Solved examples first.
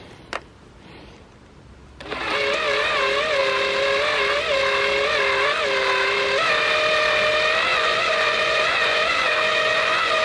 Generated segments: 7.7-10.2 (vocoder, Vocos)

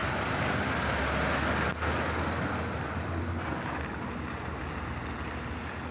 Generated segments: none